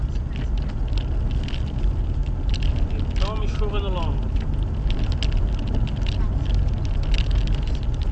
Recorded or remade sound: recorded